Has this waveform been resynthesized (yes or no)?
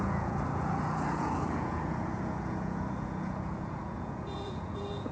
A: yes